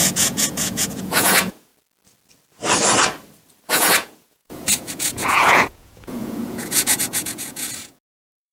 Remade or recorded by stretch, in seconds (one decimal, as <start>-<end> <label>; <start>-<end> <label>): 0.0-1.7 remade; 1.7-3.7 recorded; 3.7-8.5 remade